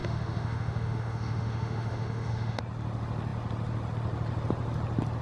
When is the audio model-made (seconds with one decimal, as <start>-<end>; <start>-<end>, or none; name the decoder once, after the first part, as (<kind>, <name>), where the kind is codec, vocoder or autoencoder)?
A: 0.0-2.6 (autoencoder, DAC-VAE)